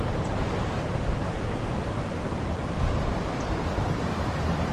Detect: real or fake fake